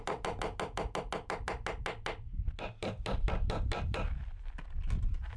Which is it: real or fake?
real